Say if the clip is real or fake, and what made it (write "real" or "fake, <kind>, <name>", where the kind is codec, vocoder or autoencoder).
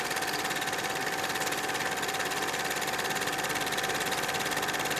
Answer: real